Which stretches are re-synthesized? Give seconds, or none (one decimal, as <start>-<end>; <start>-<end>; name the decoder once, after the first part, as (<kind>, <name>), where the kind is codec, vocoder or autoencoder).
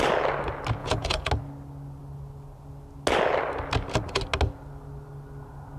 0.8-1.3 (vocoder, Vocos)